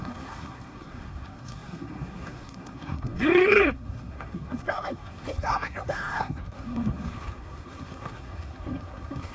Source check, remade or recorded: remade